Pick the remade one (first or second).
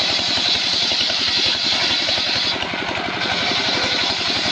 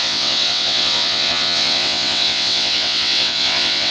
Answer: second